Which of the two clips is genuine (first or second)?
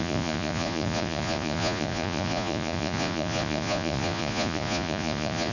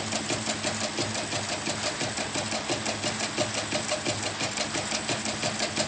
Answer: second